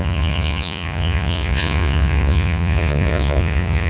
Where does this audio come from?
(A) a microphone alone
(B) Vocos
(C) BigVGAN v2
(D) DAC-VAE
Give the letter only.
B